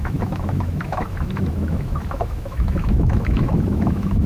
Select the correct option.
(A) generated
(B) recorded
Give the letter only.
A